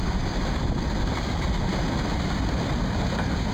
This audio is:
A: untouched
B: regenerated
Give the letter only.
B